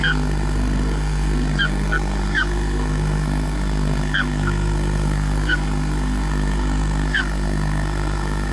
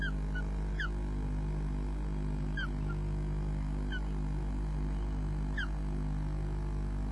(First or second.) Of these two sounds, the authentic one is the second